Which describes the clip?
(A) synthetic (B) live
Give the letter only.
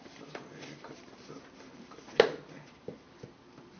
B